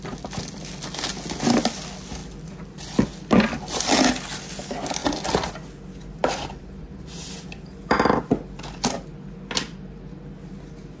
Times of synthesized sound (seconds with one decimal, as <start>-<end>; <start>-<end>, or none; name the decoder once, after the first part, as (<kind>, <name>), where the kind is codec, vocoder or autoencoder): 2.2-3.8 (vocoder, BigVGAN v2); 5.0-5.5; 6.2-8.2